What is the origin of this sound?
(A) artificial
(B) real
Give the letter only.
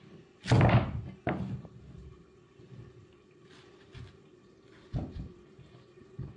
B